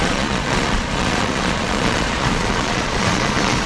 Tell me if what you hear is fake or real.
fake